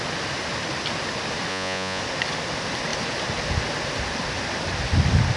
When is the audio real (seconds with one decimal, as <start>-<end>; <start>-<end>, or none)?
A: 0.0-1.5; 2.0-5.4